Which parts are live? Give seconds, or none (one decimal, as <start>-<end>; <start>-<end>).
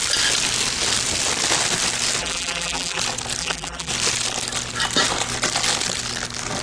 0.0-2.2; 3.0-3.4; 3.9-6.6